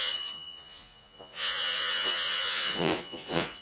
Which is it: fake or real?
fake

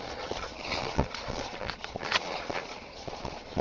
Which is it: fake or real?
fake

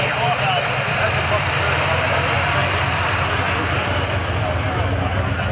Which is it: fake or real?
real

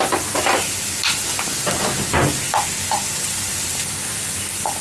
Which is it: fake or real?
real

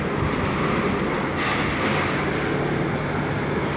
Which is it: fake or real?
real